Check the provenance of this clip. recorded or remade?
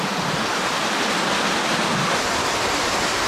recorded